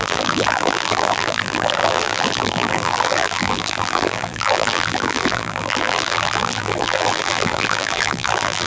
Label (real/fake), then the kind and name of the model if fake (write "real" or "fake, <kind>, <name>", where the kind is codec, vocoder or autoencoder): fake, vocoder, BigVGAN v2